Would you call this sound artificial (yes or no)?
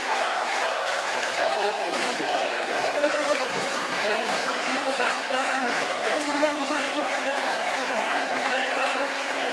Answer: yes